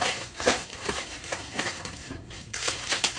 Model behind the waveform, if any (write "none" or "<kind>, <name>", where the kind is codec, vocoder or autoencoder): codec, SNAC